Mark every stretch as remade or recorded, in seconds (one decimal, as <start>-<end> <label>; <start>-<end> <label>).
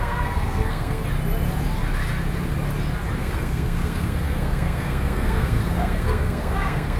0.0-1.0 remade; 1.0-3.2 recorded; 3.2-7.0 remade